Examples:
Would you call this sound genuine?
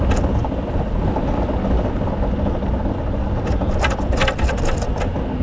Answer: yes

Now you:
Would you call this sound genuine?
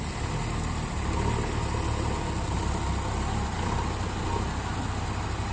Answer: yes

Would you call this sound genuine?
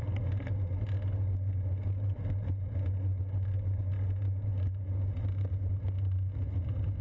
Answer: yes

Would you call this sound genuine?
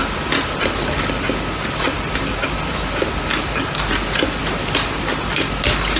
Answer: yes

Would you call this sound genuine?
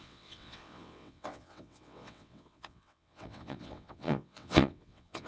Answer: no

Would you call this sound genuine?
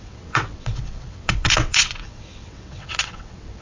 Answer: no